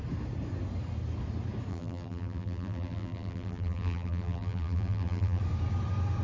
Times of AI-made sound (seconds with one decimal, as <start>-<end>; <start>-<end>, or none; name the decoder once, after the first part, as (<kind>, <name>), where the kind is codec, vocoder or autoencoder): 1.7-5.4 (vocoder, BigVGAN v2)